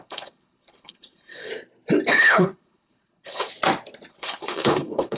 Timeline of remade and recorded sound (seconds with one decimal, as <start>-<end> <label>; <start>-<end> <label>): 0.0-1.5 remade; 1.5-2.1 recorded; 2.1-3.5 remade; 3.5-4.1 recorded; 4.1-5.2 remade